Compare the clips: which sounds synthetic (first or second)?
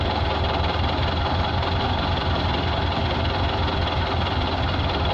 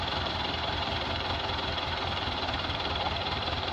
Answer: second